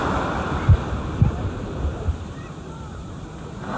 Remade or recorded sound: remade